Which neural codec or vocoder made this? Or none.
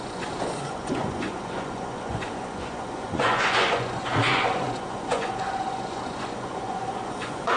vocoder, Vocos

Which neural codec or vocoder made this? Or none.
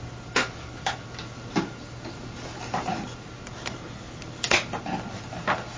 none